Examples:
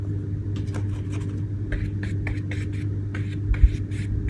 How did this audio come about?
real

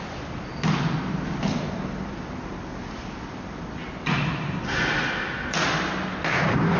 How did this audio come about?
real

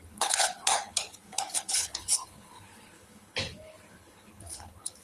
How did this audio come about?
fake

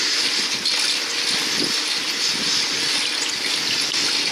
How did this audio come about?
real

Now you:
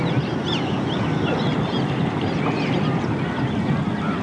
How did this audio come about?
real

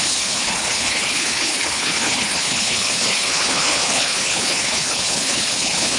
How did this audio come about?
fake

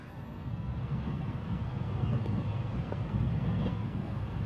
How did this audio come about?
fake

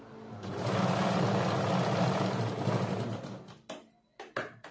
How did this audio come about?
real